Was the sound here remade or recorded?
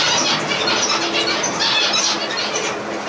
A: recorded